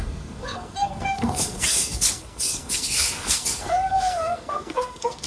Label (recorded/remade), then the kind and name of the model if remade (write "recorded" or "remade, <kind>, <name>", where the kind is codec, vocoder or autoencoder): remade, codec, SNAC